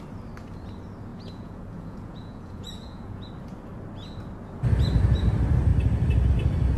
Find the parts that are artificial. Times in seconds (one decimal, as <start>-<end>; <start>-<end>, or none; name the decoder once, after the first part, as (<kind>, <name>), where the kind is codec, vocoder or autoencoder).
1.1-3.3 (vocoder, Vocos)